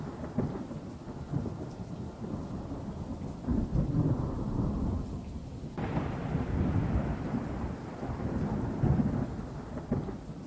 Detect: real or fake real